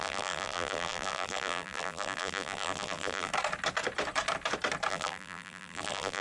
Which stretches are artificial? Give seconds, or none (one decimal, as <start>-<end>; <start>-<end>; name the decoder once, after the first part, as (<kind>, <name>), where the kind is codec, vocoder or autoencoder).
0.0-3.3 (vocoder, BigVGAN v2); 4.9-6.2

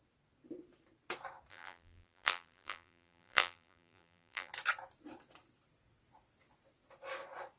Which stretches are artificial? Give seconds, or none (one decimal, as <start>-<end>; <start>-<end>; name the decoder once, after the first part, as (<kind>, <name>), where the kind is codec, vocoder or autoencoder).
1.5-4.5 (vocoder, BigVGAN v2)

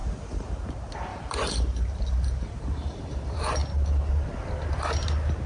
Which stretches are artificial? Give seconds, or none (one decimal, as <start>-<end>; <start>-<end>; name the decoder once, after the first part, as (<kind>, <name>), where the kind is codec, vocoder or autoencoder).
0.0-0.7 (vocoder, BigVGAN v2); 1.1-3.0

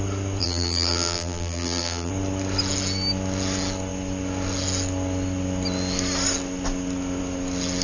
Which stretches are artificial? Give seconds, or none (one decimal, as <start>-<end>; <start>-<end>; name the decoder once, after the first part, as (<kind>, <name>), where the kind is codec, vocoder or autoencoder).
0.4-2.1 (vocoder, BigVGAN v2)

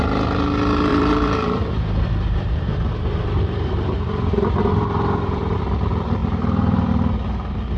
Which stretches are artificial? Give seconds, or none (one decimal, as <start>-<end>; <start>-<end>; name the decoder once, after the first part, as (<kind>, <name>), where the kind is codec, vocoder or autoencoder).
0.9-5.6 (vocoder, BigVGAN v2); 6.2-6.9